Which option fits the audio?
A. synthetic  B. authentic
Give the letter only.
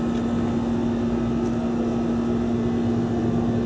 B